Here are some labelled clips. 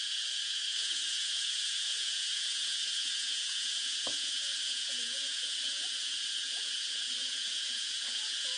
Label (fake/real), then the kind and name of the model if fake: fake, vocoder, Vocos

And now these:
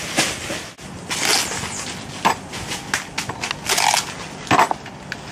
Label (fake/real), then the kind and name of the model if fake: real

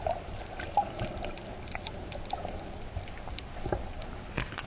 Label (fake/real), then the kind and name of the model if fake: real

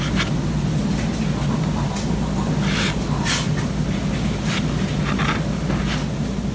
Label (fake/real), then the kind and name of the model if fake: real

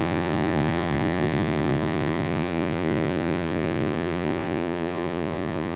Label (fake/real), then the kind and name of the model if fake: fake, vocoder, Vocos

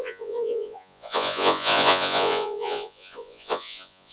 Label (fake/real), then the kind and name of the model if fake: fake, vocoder, Vocos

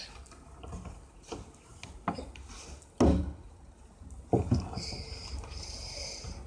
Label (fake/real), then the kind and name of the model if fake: real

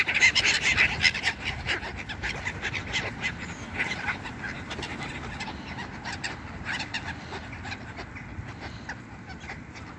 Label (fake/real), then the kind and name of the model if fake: real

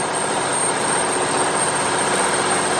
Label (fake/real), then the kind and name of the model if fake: real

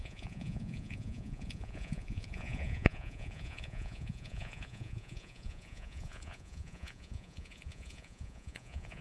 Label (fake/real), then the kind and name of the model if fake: fake, vocoder, Vocos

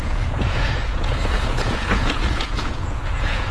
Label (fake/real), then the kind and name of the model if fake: fake, vocoder, Vocos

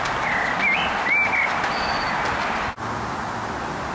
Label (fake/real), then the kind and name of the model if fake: real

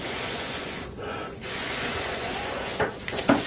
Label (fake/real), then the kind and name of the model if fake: fake, vocoder, Vocos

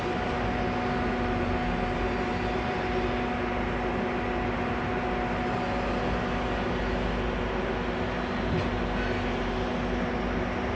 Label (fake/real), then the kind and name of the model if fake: real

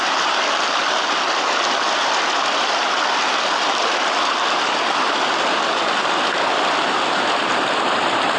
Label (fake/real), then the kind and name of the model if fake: real